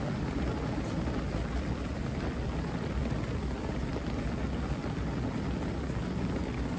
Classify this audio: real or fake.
real